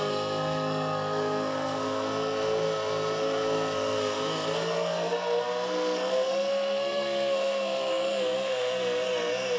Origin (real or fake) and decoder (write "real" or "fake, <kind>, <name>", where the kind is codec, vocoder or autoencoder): fake, codec, SNAC